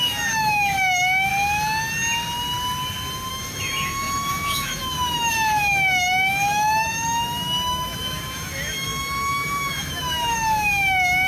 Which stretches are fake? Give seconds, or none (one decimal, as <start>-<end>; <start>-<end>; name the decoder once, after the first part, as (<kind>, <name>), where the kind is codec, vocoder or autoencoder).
0.0-1.3 (autoencoder, DAC-VAE); 3.3-11.3